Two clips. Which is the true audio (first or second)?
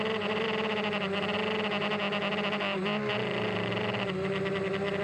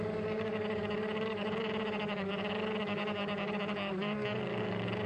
first